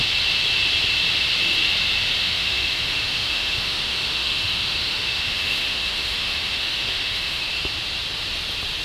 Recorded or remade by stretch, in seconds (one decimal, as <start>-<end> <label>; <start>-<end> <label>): 0.0-2.2 recorded; 2.2-7.4 remade; 7.4-8.8 recorded